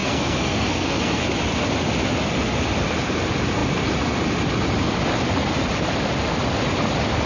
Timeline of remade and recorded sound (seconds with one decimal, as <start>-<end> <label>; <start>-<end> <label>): 0.0-1.2 remade; 1.2-7.3 recorded